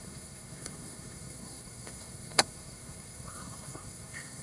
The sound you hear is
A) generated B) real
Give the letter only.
A